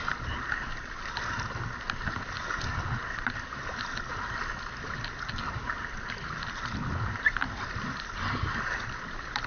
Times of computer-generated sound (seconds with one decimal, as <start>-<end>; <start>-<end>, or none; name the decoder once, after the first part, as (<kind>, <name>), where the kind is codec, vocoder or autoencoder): 0.6-9.5 (vocoder, BigVGAN v2)